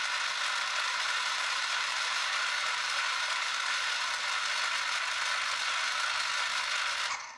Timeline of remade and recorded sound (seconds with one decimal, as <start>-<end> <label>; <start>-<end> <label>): 0.0-0.9 recorded; 0.9-3.9 remade; 3.9-7.4 recorded